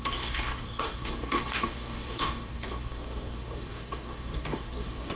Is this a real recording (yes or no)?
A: no